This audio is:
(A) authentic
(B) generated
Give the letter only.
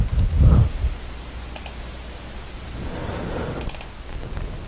A